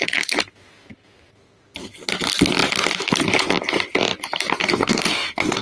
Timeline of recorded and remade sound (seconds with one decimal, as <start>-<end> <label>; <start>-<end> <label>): 0.0-4.6 recorded; 4.6-5.6 remade